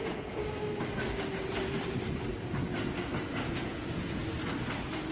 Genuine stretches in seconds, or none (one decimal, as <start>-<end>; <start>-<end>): 0.4-3.5; 4.2-5.1